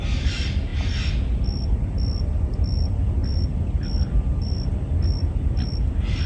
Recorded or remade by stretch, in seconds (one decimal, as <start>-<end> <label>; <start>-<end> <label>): 0.0-3.2 recorded; 3.2-5.1 remade; 5.1-6.3 recorded